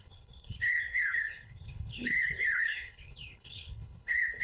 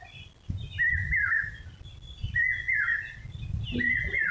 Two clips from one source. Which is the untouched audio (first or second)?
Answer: second